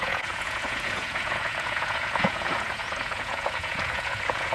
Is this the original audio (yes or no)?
no